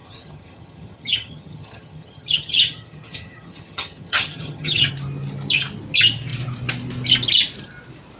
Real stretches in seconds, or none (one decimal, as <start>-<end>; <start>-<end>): 4.9-8.2